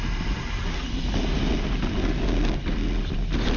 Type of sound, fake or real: real